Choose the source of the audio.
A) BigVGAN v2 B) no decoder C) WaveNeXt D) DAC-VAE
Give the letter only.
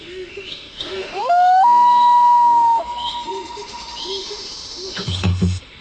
D